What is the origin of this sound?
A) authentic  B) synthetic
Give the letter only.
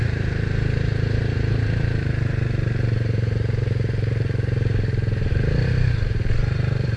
B